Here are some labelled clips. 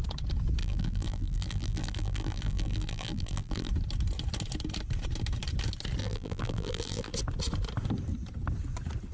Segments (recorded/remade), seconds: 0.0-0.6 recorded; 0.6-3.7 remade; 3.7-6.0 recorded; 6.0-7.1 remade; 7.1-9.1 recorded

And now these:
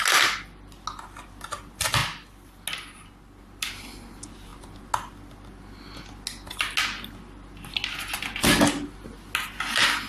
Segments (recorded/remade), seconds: 0.0-10.1 recorded

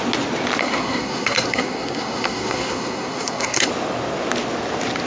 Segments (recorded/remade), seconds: 0.0-0.6 recorded; 0.6-3.7 remade; 3.7-5.1 recorded

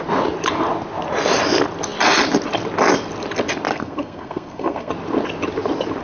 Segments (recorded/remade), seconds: 0.0-3.7 recorded; 3.7-4.9 remade; 4.9-6.0 recorded

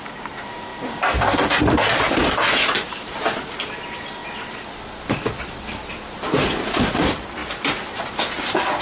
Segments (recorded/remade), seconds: 0.0-4.2 recorded; 4.2-5.9 remade; 5.9-7.4 recorded; 7.4-8.2 remade; 8.2-8.8 recorded

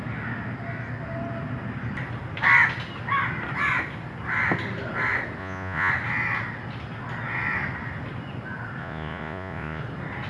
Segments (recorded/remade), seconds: 0.0-5.4 recorded; 5.4-5.9 remade; 5.9-8.8 recorded; 8.8-9.8 remade; 9.8-10.3 recorded

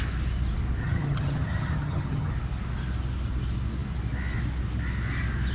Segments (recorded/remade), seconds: 0.0-0.8 recorded; 0.8-2.3 remade; 2.3-5.5 recorded

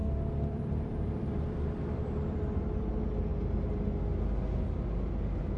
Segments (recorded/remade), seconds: 0.0-2.9 remade; 2.9-5.6 recorded